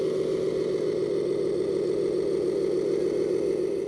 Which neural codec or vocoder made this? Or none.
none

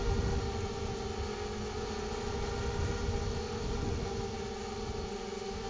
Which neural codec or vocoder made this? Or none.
none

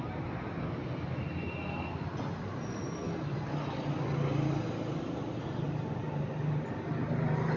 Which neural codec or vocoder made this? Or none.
none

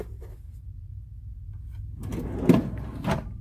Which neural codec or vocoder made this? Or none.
none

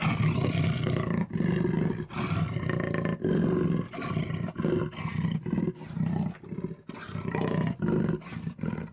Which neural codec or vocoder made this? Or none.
none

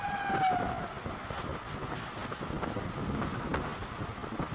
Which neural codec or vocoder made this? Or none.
none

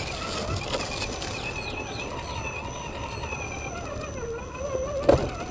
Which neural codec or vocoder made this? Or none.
none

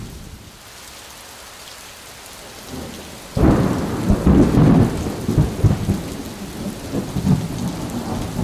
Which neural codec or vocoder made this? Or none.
none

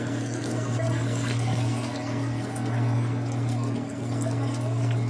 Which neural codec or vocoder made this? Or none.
codec, SNAC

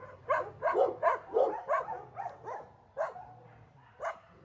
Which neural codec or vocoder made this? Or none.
none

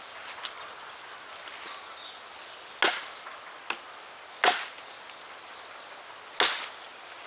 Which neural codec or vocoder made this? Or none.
none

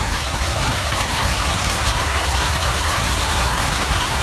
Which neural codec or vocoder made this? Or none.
codec, SNAC